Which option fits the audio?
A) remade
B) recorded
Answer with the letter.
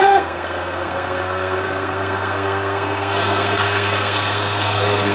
A